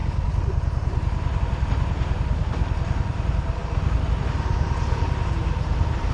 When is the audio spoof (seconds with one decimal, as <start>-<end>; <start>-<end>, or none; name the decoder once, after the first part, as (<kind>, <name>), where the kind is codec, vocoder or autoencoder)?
0.0-3.6 (vocoder, BigVGAN v2); 4.3-6.1